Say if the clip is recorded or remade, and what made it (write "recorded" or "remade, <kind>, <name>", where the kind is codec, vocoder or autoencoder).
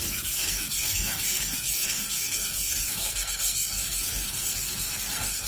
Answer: remade, codec, SNAC